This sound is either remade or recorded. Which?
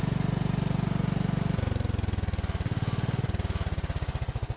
recorded